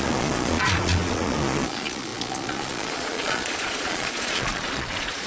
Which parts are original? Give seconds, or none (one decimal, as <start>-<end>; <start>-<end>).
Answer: none